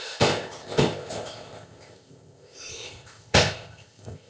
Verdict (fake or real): fake